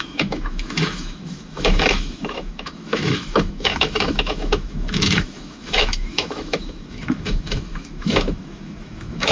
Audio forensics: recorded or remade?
remade